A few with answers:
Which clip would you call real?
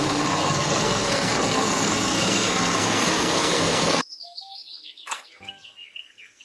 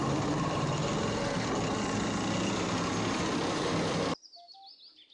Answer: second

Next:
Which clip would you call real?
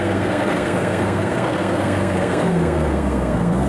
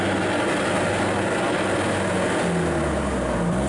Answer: second